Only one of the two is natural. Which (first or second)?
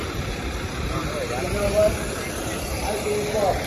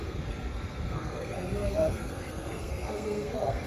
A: first